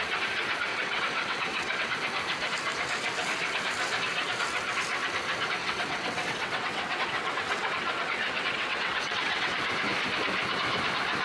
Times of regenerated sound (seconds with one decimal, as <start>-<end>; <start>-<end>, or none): 0.7-1.9; 5.6-9.6